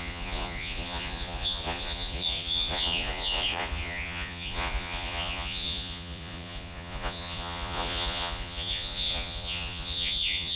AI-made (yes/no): yes